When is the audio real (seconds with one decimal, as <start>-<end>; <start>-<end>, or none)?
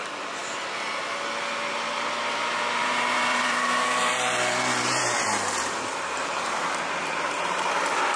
0.0-2.8; 7.7-8.2